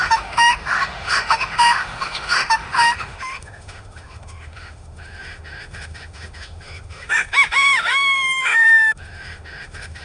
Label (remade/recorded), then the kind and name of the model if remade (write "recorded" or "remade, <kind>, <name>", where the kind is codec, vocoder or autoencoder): remade, autoencoder, DAC-VAE